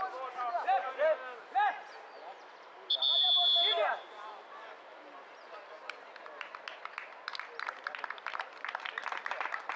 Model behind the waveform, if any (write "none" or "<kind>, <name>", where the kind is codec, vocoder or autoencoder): none